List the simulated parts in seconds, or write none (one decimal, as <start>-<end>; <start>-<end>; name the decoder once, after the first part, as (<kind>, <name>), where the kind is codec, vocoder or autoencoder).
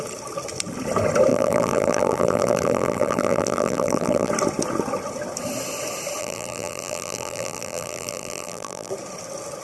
1.3-4.3 (vocoder, BigVGAN v2); 6.2-8.9